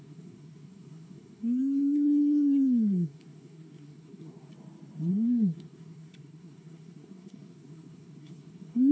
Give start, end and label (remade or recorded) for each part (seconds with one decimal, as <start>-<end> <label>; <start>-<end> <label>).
0.0-4.5 remade; 4.5-5.1 recorded; 5.1-8.9 remade